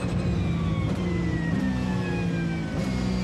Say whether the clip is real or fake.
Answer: real